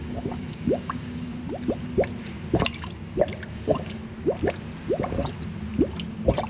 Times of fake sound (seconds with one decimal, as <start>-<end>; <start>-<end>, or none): 0.0-1.4; 3.5-4.0